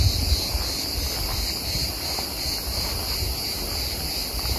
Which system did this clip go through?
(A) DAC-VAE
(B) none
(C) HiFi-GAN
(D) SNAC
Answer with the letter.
B